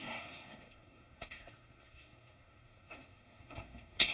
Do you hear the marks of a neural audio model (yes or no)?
yes